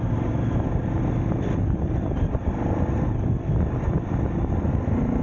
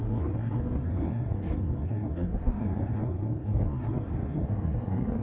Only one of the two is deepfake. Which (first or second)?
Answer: second